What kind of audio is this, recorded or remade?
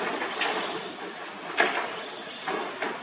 recorded